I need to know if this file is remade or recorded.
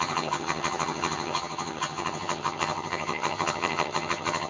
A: remade